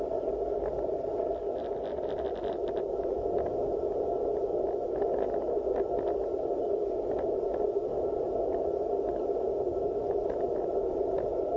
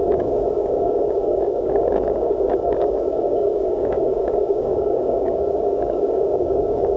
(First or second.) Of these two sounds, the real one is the first